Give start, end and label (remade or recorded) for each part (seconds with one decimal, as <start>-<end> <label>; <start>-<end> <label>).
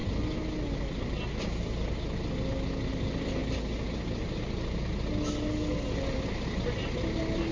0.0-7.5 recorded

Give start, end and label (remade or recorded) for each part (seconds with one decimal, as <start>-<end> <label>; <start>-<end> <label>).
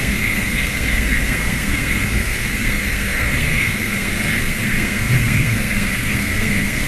0.0-6.9 remade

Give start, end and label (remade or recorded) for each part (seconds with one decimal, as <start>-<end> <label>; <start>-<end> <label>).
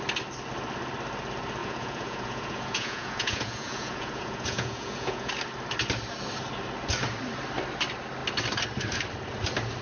0.0-1.6 recorded; 1.6-5.3 remade; 5.3-9.8 recorded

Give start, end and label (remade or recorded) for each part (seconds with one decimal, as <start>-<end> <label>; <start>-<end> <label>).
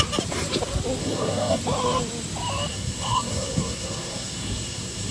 0.0-1.0 recorded; 1.0-1.6 remade; 1.6-2.7 recorded; 2.7-5.1 remade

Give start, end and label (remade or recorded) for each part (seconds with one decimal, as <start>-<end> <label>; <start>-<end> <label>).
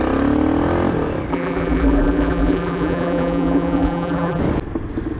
0.0-1.3 recorded; 1.3-4.4 remade; 4.4-5.2 recorded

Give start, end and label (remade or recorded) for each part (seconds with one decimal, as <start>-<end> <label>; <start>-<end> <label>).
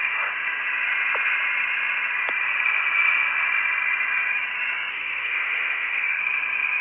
0.0-4.9 recorded; 4.9-6.2 remade; 6.2-6.8 recorded